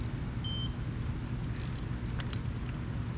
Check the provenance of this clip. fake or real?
real